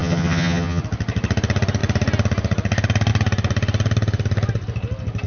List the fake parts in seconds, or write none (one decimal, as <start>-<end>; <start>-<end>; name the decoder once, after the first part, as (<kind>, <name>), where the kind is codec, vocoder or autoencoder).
0.0-0.8 (vocoder, HiFi-GAN)